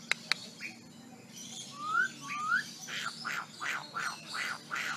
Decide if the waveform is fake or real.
real